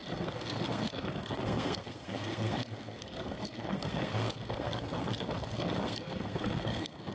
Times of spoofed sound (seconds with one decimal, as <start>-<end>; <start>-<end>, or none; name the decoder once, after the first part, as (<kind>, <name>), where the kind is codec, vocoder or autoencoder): 0.0-7.1 (codec, SNAC)